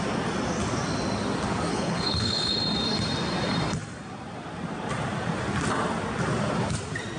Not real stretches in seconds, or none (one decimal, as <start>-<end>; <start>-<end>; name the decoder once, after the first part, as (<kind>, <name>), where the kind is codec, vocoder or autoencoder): 1.7-2.6 (codec, HILCodec)

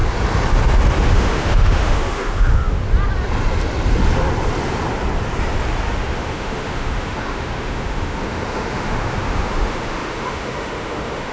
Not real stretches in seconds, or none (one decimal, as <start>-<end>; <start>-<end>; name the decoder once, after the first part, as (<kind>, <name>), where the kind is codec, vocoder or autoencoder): 1.1-2.8 (autoencoder, DAC-VAE); 6.0-11.3